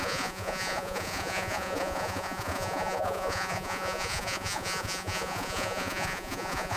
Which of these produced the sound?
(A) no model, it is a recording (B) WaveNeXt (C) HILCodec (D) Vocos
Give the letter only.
D